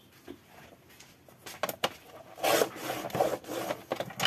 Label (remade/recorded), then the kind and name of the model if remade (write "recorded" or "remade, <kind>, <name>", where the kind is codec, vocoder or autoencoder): recorded